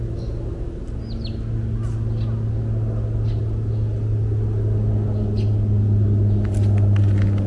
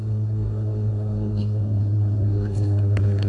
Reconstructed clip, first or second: second